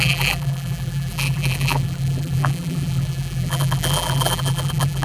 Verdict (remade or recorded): remade